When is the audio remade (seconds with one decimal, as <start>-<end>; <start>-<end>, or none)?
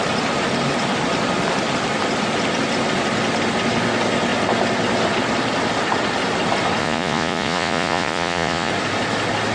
6.8-8.7